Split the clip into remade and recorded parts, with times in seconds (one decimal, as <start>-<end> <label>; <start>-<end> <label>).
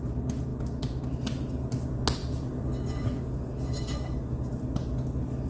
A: 0.0-5.5 recorded